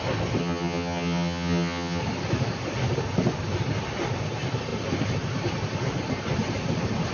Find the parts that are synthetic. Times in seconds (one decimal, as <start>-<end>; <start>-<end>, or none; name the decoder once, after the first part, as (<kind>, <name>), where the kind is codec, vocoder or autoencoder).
0.4-2.0 (vocoder, HiFi-GAN)